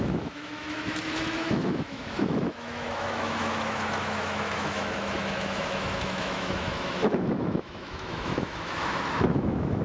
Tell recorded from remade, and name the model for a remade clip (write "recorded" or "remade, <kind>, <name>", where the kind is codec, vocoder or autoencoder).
remade, autoencoder, DAC-VAE